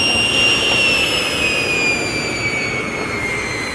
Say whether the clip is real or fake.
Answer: real